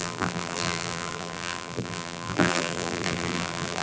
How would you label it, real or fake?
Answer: fake